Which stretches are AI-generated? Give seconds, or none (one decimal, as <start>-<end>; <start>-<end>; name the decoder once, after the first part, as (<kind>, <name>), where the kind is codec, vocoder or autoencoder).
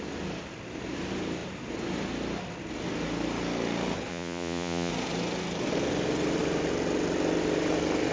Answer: 4.1-4.9 (vocoder, Vocos)